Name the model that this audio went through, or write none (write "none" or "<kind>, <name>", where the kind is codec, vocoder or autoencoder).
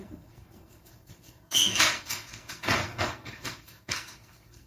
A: codec, SNAC